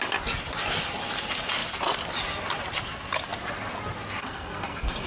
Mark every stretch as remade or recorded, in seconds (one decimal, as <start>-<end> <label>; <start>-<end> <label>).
0.0-4.2 recorded; 4.2-5.1 remade